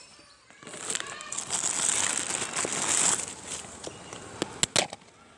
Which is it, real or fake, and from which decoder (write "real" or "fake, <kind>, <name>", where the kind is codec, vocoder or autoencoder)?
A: real